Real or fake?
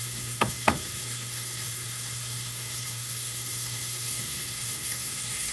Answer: fake